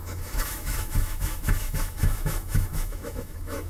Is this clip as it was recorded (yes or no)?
no